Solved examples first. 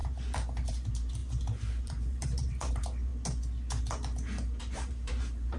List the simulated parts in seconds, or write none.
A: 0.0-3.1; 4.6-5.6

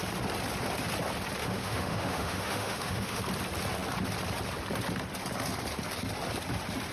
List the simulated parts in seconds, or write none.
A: 1.4-3.2

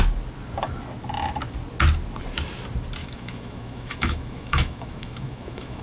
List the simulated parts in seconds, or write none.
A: 3.0-5.8

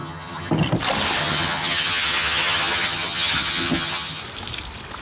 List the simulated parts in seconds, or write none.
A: 0.0-0.5; 1.2-4.2